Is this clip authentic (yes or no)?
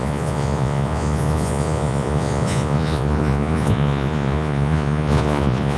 no